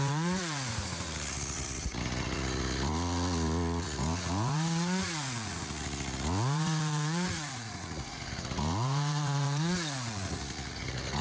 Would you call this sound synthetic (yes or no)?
yes